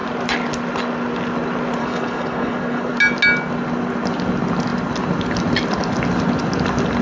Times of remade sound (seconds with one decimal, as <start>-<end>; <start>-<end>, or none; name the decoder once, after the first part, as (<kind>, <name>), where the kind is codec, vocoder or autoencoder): 1.8-2.9 (codec, HILCodec)